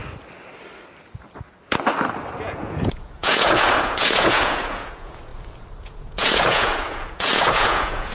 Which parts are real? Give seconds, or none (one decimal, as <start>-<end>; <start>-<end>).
0.0-2.4; 5.3-5.8